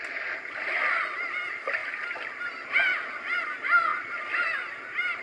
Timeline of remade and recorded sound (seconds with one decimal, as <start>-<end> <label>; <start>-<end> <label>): 0.0-1.8 recorded; 1.8-2.7 remade; 2.7-3.9 recorded; 3.9-5.2 remade